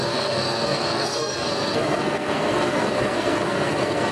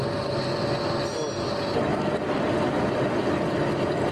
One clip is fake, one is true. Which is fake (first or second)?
first